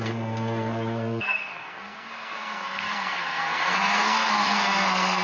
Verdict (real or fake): fake